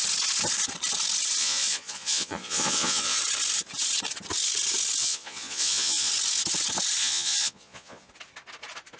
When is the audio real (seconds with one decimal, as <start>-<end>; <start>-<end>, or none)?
0.0-1.4; 3.2-5.0; 6.1-7.0; 8.1-9.0